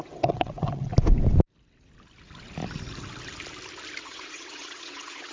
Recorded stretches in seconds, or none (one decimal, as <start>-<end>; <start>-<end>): 0.9-4.0